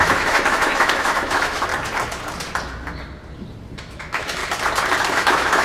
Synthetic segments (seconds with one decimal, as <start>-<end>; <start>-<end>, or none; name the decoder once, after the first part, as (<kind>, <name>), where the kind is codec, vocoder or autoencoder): 0.0-1.7 (autoencoder, DAC-VAE); 3.8-4.4; 5.1-5.6